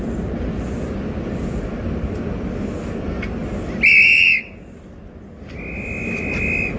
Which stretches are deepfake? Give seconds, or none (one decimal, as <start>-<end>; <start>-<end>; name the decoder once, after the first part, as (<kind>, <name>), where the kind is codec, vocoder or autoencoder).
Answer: none